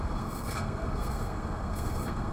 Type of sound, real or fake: fake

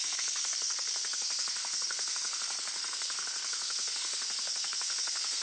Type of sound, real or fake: fake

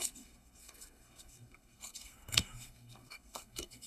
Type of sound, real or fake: fake